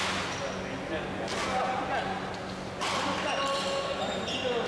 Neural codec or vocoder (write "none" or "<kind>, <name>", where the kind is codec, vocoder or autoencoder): none